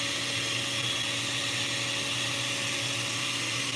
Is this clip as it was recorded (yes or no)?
yes